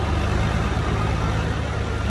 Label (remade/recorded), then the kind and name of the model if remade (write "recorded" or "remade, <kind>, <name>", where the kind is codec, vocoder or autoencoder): recorded